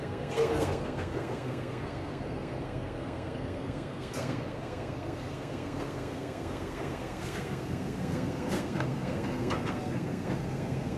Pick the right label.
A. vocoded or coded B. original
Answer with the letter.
A